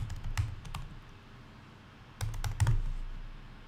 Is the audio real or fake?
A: real